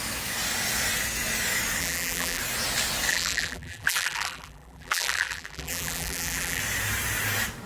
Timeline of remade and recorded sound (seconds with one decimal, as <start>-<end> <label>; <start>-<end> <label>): 0.0-1.8 recorded; 1.8-2.4 remade; 2.4-3.1 recorded; 3.1-6.6 remade; 6.6-7.7 recorded